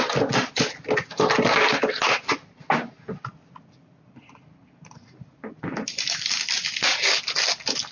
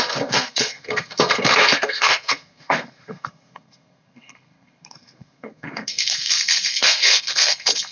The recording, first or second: first